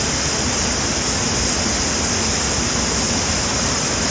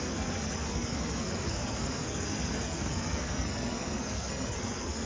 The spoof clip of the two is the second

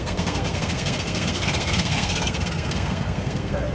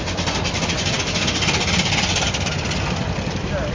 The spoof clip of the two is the first